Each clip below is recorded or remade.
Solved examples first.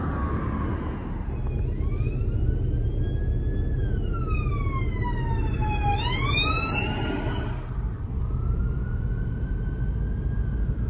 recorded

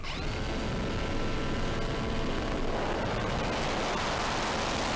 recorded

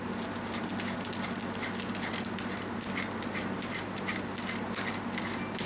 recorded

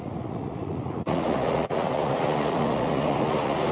remade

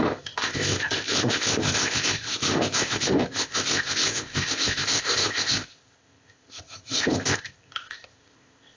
remade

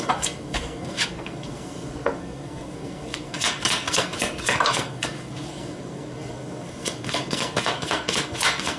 remade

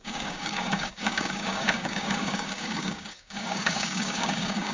remade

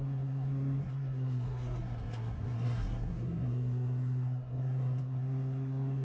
remade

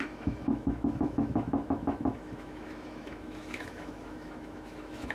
remade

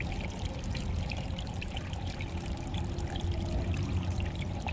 remade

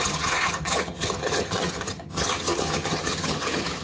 remade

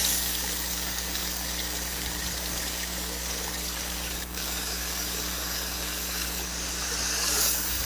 remade